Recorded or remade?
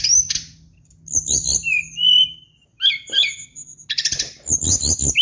recorded